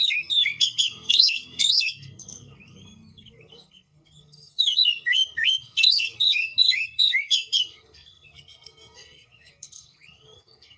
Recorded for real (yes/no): no